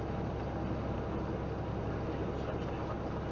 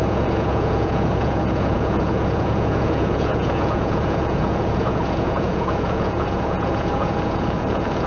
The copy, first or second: second